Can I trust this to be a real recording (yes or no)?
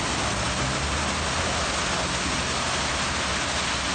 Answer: yes